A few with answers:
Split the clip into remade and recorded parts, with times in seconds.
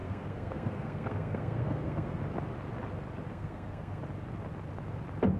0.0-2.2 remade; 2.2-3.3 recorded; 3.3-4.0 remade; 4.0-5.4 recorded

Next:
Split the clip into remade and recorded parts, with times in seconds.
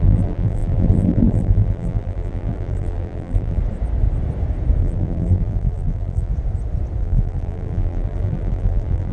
0.0-3.6 remade; 3.6-4.8 recorded; 4.8-6.3 remade; 6.3-7.0 recorded; 7.0-9.1 remade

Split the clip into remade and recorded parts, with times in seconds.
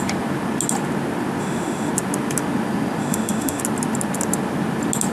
0.0-1.4 recorded; 1.4-1.9 remade; 1.9-3.0 recorded; 3.0-3.6 remade; 3.6-5.1 recorded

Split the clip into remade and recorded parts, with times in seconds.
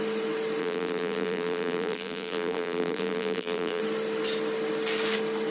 0.0-0.6 recorded; 0.6-3.8 remade; 3.8-5.5 recorded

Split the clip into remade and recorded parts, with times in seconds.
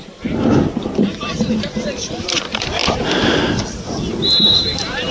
0.0-2.8 remade; 2.8-4.4 recorded; 4.4-5.1 remade